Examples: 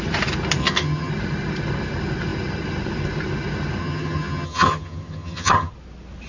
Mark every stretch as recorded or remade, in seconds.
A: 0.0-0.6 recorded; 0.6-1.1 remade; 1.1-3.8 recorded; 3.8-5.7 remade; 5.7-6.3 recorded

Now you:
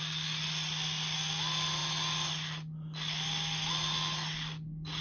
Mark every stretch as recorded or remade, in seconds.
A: 0.0-5.0 recorded

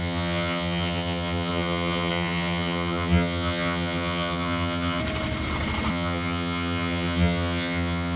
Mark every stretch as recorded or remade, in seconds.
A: 0.0-5.0 remade; 5.0-5.9 recorded; 5.9-8.2 remade

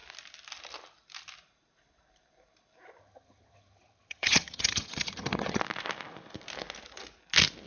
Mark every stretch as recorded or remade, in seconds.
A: 0.0-3.0 recorded; 3.0-5.6 remade; 5.6-7.7 recorded